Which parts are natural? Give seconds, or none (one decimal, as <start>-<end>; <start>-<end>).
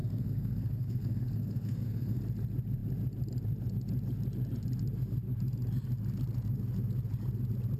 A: 2.2-7.8